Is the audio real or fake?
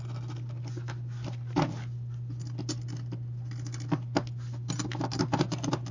real